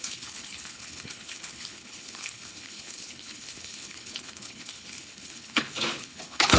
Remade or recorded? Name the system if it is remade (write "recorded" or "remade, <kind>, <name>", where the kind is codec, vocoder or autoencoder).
remade, codec, HILCodec